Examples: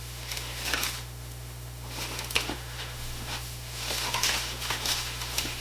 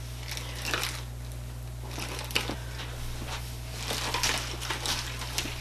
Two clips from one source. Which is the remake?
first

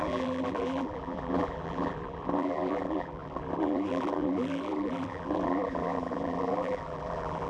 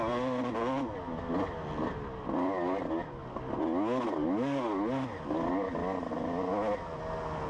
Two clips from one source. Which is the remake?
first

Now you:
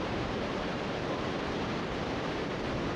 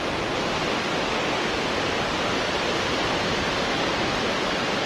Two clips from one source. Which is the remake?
first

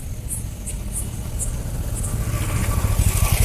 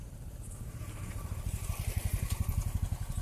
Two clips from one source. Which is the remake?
second